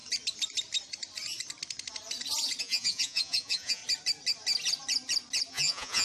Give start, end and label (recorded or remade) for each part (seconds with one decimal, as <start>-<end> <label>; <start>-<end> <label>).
0.0-2.6 recorded; 2.6-3.8 remade; 3.8-5.5 recorded; 5.5-6.0 remade